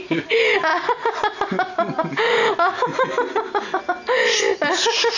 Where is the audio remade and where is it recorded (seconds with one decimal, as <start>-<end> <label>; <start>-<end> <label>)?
0.0-5.2 recorded